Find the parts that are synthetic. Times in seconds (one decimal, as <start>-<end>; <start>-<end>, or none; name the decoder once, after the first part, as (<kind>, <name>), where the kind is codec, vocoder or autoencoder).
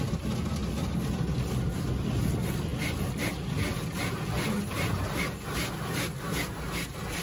none